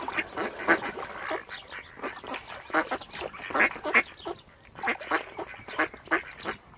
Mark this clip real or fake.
real